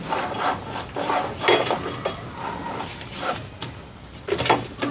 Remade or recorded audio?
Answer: recorded